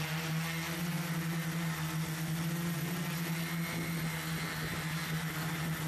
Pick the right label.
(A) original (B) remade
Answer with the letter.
A